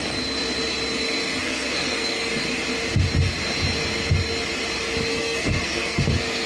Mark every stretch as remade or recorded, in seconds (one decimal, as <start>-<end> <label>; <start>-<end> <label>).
0.0-1.4 recorded; 1.4-2.3 remade; 2.3-5.1 recorded; 5.1-6.5 remade